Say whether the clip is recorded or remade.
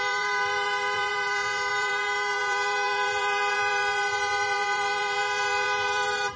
remade